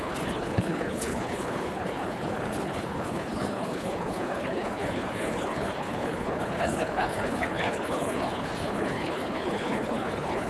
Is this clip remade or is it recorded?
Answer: remade